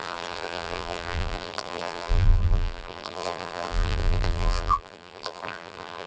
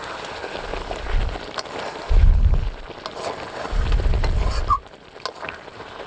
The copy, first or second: first